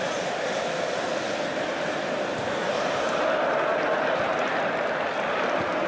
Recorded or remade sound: recorded